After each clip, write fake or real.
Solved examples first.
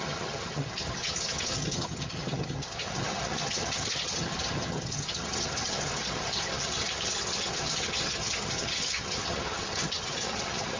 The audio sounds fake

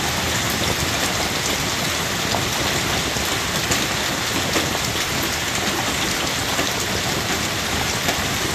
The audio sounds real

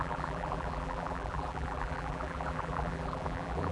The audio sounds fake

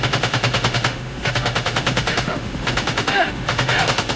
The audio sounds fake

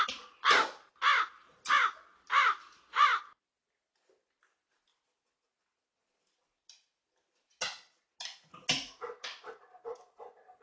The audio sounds real